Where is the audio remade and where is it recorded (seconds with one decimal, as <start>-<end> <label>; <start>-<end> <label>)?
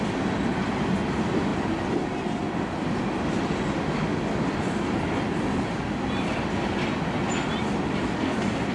0.0-8.7 recorded